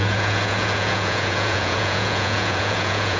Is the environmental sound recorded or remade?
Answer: remade